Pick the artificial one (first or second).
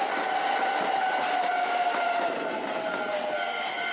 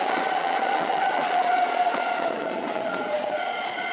second